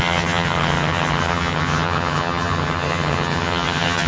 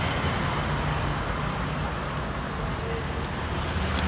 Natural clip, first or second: second